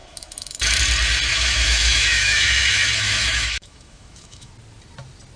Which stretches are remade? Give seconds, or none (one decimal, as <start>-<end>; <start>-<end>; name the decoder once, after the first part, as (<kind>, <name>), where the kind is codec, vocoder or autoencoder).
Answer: 0.0-0.8 (autoencoder, DAC-VAE); 1.3-4.5